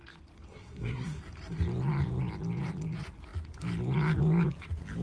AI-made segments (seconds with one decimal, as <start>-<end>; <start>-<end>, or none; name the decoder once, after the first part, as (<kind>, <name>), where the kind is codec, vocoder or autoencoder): 0.5-1.2 (codec, SNAC)